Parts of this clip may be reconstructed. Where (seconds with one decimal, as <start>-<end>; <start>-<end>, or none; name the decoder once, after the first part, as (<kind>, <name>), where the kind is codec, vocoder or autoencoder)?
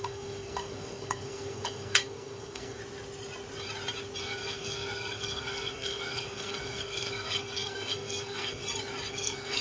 0.0-2.8 (codec, SNAC); 4.2-8.6; 9.1-9.6